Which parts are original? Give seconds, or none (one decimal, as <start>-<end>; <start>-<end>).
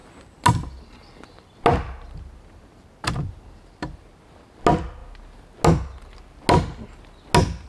0.0-7.7